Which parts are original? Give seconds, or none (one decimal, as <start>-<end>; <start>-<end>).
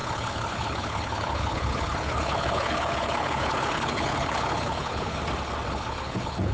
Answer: 5.2-5.7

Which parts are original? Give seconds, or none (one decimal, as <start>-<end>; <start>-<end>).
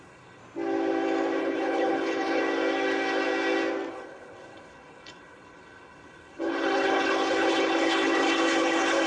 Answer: 0.4-1.4; 2.4-3.9